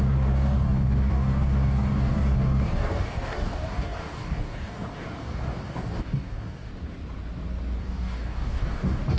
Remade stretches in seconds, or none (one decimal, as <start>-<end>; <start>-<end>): 0.0-6.7; 7.8-9.2